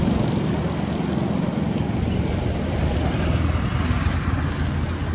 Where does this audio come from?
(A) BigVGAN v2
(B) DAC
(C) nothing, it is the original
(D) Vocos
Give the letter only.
C